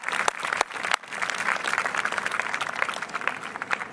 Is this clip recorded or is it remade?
recorded